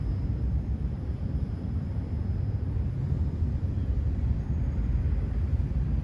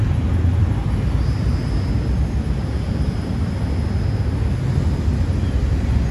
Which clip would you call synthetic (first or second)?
first